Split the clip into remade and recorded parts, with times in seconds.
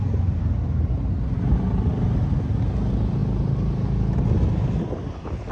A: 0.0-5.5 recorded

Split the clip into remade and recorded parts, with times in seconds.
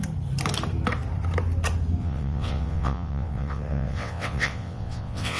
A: 0.0-2.0 recorded; 2.0-5.4 remade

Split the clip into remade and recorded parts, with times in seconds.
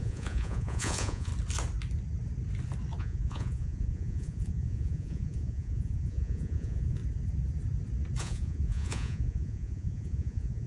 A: 0.0-1.3 remade; 1.3-3.0 recorded; 3.0-7.0 remade; 7.0-8.2 recorded; 8.2-10.7 remade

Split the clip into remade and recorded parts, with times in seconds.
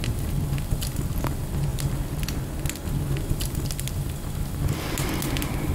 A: 0.0-5.7 recorded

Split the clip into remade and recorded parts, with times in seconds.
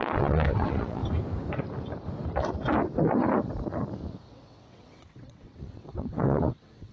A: 0.0-1.0 remade; 1.0-4.3 recorded; 4.3-6.9 remade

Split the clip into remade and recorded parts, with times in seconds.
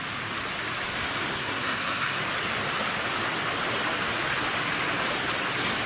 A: 0.0-1.3 recorded; 1.3-2.2 remade; 2.2-5.9 recorded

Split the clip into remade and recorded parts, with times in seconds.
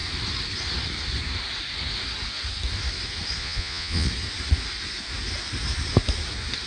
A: 0.0-3.4 recorded; 3.4-4.1 remade; 4.1-6.7 recorded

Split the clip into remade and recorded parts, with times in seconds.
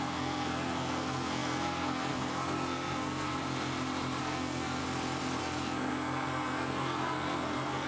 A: 0.0-3.3 remade; 3.3-4.2 recorded; 4.2-4.8 remade; 4.8-5.4 recorded; 5.4-7.9 remade